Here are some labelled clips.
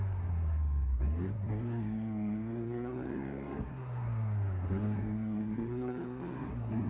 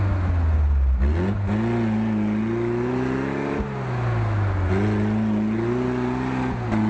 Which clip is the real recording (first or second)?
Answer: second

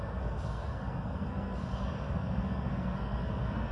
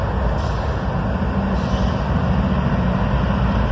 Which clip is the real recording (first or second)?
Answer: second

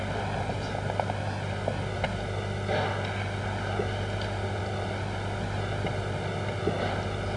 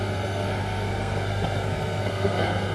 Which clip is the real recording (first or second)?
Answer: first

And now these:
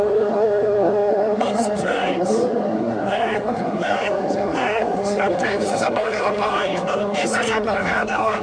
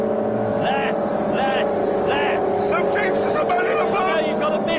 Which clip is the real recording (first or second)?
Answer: second